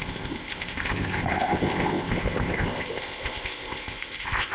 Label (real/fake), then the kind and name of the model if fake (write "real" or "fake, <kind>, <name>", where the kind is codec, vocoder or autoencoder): fake, codec, ZipCodec